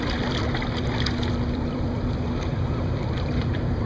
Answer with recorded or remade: remade